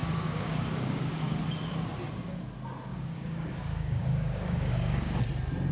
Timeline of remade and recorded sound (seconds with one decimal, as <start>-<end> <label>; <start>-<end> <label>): 0.0-1.4 remade; 1.4-2.9 recorded; 2.9-5.2 remade; 5.2-5.7 recorded